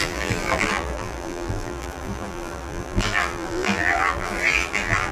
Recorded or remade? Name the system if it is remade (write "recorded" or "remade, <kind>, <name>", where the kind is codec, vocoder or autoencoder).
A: remade, vocoder, BigVGAN v2